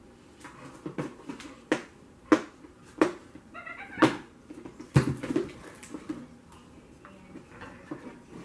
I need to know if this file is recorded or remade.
recorded